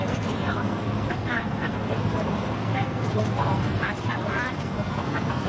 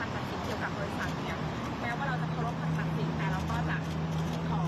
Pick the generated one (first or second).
first